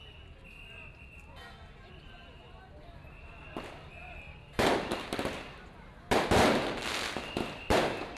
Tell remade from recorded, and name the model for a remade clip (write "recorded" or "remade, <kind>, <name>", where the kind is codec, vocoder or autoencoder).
recorded